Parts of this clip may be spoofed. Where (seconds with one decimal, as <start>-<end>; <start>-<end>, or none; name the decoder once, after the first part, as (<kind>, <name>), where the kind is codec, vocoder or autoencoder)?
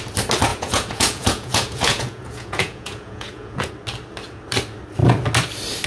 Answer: 0.5-3.7 (vocoder, Vocos)